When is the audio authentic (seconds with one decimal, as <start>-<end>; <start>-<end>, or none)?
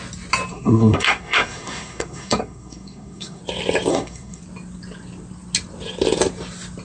0.0-0.5; 3.4-3.9; 4.4-6.8